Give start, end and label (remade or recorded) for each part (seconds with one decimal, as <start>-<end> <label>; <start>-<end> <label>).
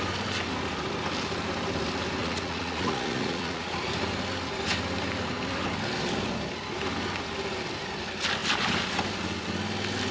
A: 0.0-2.2 recorded; 2.2-3.8 remade; 3.8-10.1 recorded